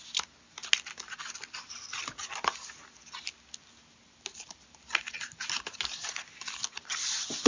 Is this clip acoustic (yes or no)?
yes